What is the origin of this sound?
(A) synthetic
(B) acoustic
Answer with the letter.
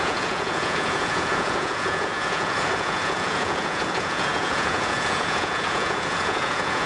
A